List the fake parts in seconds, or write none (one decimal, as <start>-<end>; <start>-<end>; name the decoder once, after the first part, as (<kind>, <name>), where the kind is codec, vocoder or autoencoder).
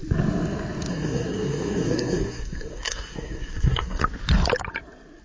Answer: 0.9-4.0 (codec, SNAC)